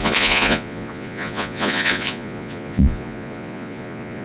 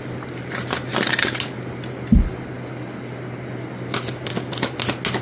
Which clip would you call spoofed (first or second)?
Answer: first